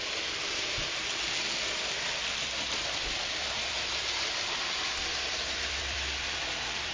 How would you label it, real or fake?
fake